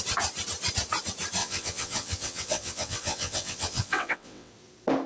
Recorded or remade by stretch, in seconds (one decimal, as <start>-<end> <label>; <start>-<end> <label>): 0.0-1.4 recorded; 1.4-4.5 remade; 4.5-5.1 recorded